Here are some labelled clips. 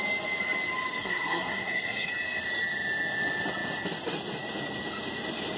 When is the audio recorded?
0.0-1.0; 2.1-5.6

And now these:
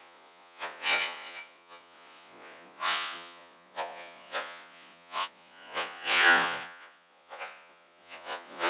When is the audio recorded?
none

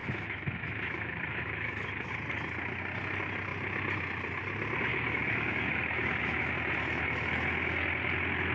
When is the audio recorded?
2.1-4.9; 6.5-8.5

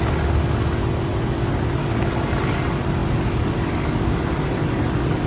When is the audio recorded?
0.0-5.3

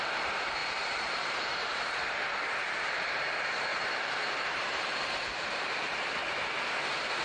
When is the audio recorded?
0.0-0.6; 3.2-3.7; 5.6-7.2